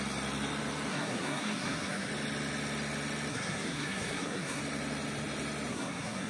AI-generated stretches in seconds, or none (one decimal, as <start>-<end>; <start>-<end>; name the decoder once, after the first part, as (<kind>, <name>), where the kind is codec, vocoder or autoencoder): 0.9-2.1 (codec, SNAC); 3.3-4.6; 5.7-6.3

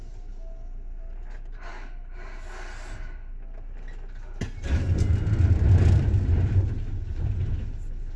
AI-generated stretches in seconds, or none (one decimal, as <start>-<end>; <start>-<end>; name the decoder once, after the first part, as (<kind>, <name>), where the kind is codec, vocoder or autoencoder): none

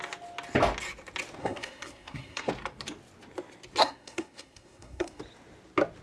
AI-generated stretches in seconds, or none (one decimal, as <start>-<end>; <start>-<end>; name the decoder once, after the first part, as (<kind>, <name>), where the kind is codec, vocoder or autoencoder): 1.4-2.5 (codec, SNAC); 3.8-5.2

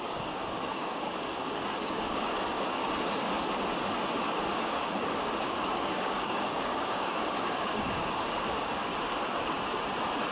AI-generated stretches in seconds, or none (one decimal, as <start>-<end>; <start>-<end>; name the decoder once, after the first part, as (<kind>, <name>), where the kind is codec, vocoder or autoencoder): 0.0-2.8 (codec, DAC); 4.6-8.9

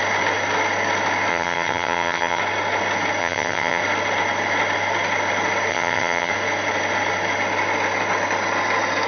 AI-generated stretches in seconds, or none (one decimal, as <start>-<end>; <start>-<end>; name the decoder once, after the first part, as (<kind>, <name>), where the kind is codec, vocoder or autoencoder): 1.3-2.4 (vocoder, HiFi-GAN); 3.2-3.8; 5.7-6.3

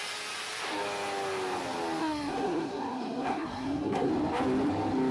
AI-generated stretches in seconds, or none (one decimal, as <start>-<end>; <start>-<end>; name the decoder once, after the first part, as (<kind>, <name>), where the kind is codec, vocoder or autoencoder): 2.0-4.1 (codec, SNAC)

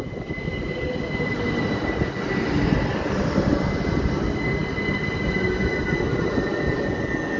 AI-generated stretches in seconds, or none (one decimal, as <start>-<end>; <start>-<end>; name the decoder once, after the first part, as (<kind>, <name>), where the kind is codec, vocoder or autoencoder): none